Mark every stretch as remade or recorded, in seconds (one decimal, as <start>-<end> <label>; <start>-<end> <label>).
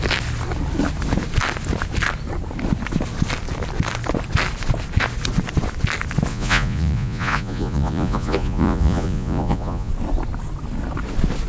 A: 0.0-6.3 recorded; 6.3-9.9 remade; 9.9-11.5 recorded